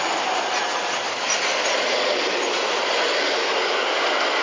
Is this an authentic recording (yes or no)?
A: yes